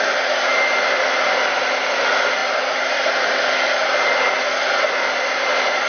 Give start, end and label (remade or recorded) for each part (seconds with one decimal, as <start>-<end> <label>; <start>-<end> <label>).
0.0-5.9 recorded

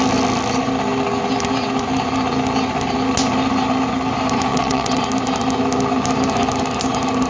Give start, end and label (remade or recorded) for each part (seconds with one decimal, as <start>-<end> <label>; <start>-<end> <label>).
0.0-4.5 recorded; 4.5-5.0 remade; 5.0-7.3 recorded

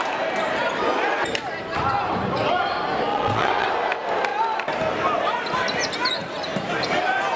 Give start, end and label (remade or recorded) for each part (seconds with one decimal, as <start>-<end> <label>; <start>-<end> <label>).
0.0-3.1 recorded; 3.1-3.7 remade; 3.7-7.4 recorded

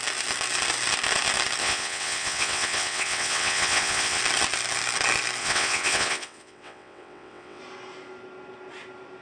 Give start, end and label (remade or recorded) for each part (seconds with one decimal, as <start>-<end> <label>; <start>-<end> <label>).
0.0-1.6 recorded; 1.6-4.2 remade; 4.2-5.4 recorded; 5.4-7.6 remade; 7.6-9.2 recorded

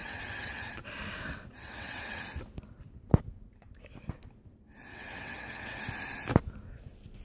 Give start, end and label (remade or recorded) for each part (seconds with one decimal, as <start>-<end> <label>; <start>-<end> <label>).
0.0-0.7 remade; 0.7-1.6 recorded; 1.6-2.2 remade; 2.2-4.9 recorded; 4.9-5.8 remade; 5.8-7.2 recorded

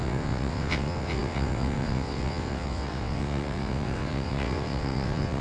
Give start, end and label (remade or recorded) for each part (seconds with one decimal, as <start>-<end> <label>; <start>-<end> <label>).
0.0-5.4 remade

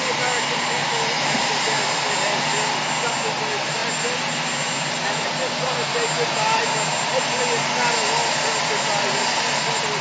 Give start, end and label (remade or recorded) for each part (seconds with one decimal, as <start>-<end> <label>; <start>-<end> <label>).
0.0-10.0 recorded

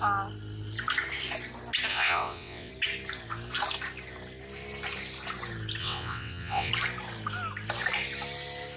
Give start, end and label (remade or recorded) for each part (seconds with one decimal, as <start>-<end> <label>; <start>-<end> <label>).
0.0-1.9 recorded; 1.9-2.7 remade; 2.7-5.8 recorded; 5.8-6.7 remade; 6.7-8.8 recorded